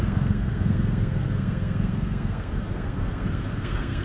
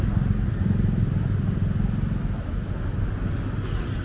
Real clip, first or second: second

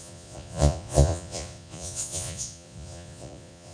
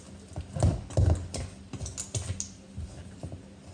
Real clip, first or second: second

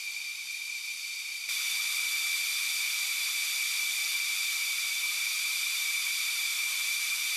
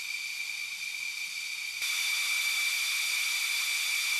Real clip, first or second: second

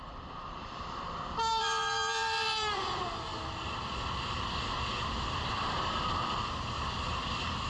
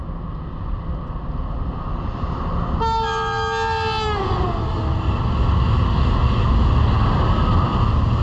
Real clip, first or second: second